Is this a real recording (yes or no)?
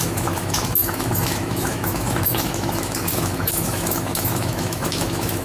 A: no